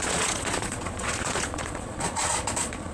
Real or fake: fake